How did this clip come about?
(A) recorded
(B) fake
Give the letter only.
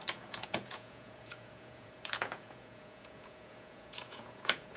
B